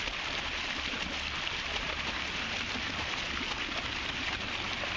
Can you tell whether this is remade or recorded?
recorded